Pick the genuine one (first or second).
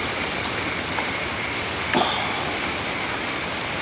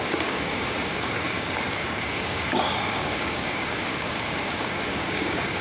first